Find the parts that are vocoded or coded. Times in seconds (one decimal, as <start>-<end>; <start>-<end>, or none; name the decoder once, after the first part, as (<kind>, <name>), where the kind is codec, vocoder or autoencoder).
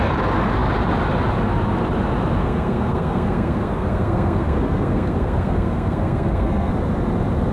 2.4-6.7 (codec, SNAC)